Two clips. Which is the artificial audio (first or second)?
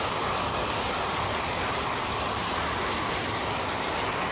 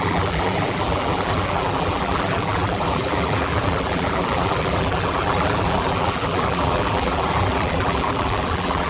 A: second